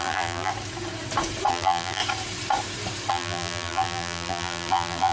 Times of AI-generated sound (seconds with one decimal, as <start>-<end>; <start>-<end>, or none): 0.0-0.5; 1.5-2.0; 3.1-5.1